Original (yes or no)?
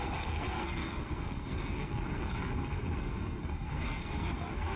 no